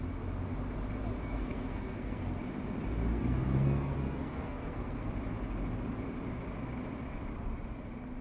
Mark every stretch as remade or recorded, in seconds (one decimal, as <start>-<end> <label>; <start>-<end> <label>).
0.0-1.2 recorded; 1.2-2.4 remade; 2.4-3.1 recorded; 3.1-5.1 remade; 5.1-8.2 recorded

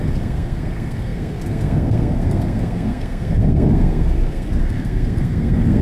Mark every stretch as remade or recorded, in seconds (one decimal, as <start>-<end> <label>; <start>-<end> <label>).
0.0-5.8 remade

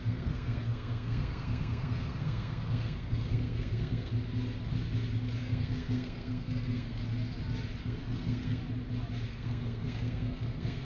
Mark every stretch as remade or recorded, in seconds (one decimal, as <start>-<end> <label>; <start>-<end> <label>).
0.0-4.1 remade; 4.1-5.4 recorded; 5.4-7.0 remade; 7.0-7.8 recorded; 7.8-8.6 remade; 8.6-9.3 recorded; 9.3-10.8 remade

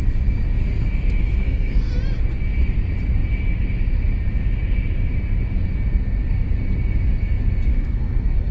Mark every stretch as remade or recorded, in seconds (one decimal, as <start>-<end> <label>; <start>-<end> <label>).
0.0-1.2 recorded; 1.2-1.9 remade; 1.9-7.7 recorded; 7.7-8.5 remade

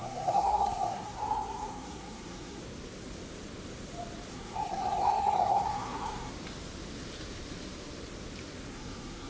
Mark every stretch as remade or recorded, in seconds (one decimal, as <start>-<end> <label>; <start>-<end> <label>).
0.0-2.6 remade; 2.6-4.3 recorded; 4.3-6.3 remade; 6.3-8.7 recorded; 8.7-9.3 remade

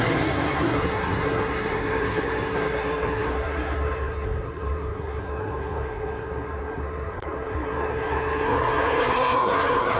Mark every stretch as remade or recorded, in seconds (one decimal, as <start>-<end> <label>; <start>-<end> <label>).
0.0-10.0 remade

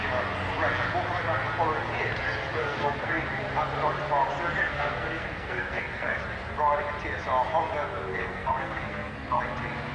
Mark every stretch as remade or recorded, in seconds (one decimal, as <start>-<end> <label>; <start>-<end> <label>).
0.0-2.6 recorded; 2.6-3.1 remade; 3.1-4.6 recorded; 4.6-6.2 remade; 6.2-8.1 recorded; 8.1-9.4 remade; 9.4-9.9 recorded

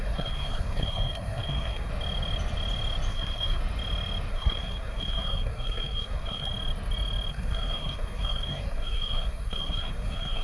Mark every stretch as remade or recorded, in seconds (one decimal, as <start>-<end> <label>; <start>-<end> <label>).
0.0-1.9 remade; 1.9-3.1 recorded; 3.1-3.6 remade; 3.6-4.3 recorded; 4.3-6.5 remade; 6.5-7.3 recorded; 7.3-10.4 remade